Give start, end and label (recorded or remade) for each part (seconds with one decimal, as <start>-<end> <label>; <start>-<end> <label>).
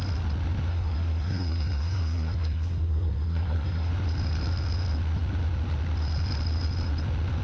0.0-0.7 recorded; 0.7-3.9 remade; 3.9-7.4 recorded